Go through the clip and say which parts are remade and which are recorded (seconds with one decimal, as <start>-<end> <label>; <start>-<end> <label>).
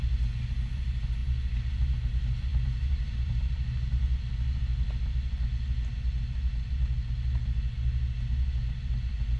0.0-1.2 recorded; 1.2-2.1 remade; 2.1-2.5 recorded; 2.5-3.9 remade; 3.9-9.4 recorded